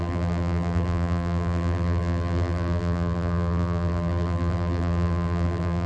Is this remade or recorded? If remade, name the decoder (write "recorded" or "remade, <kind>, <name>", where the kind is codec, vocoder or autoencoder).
remade, vocoder, BigVGAN v2